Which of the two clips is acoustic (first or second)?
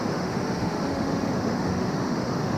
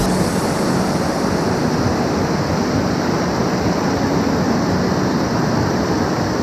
second